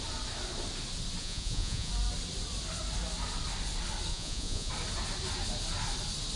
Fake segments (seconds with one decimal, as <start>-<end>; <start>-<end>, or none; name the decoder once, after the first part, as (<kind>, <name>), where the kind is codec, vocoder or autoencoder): 1.2-1.9 (vocoder, Vocos); 4.1-4.7